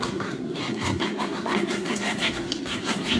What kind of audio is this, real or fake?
fake